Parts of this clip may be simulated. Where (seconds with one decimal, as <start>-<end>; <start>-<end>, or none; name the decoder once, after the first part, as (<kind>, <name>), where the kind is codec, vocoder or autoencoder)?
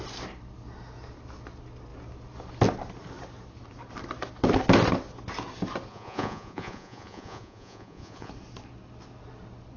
5.9-8.3 (vocoder, Vocos)